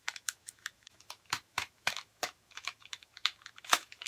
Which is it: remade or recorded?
remade